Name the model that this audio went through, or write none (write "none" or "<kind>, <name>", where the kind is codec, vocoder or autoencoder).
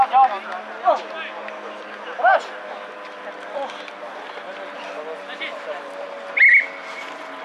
none